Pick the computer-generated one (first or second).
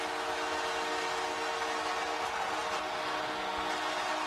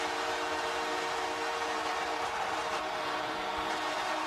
second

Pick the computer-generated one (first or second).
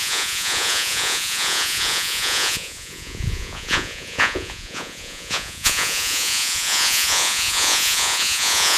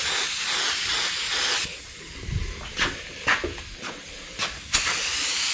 first